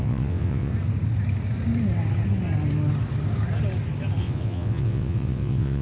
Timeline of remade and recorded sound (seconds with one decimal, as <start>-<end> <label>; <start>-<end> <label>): 0.0-0.7 remade; 0.7-4.2 recorded; 4.2-5.8 remade